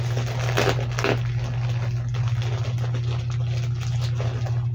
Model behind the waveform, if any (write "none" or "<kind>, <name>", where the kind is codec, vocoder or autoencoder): none